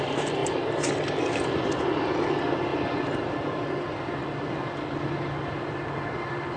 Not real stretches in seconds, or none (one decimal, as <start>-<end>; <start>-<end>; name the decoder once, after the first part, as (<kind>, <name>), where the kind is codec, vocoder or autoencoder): none